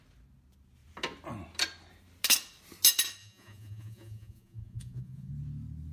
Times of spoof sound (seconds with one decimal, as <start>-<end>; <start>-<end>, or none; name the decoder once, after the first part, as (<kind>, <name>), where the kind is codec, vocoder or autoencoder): 3.2-5.3 (vocoder, Vocos)